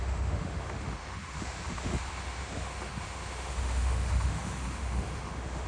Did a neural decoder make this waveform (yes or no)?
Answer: yes